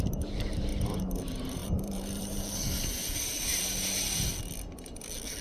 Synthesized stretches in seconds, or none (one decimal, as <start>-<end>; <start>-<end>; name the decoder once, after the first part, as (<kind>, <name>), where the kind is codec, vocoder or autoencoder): 0.0-0.7 (vocoder, BigVGAN v2); 1.2-3.0

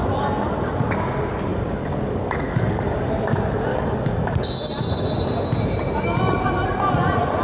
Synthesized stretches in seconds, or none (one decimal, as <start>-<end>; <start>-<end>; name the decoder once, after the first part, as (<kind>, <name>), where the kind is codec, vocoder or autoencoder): 1.5-3.1 (codec, DAC); 3.7-4.3